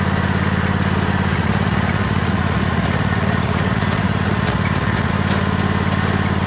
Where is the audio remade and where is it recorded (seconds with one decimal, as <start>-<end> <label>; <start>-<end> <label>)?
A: 0.0-1.3 recorded; 1.3-5.1 remade; 5.1-6.5 recorded